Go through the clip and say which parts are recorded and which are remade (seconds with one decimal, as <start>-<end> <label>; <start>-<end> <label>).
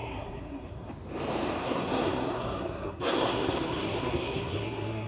0.0-0.9 remade; 0.9-1.6 recorded; 1.6-5.1 remade